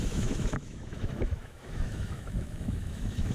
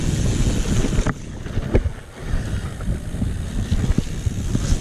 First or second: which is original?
second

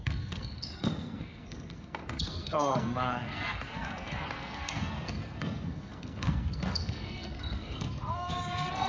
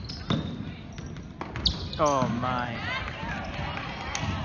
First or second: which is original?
second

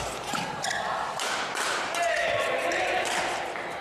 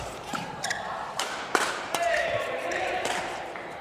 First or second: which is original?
first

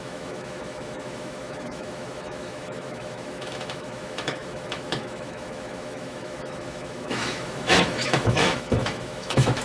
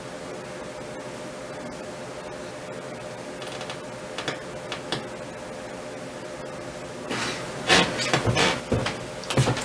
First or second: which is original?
second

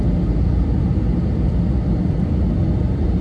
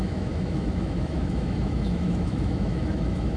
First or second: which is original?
first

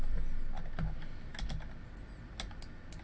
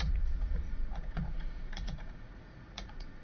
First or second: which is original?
first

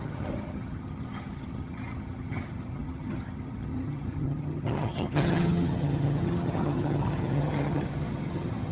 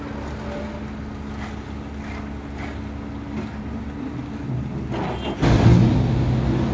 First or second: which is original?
second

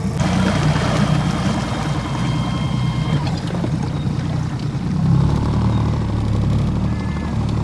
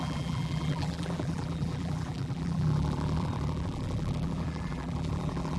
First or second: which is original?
first